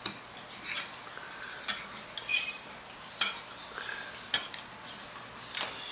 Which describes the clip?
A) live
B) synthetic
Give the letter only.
A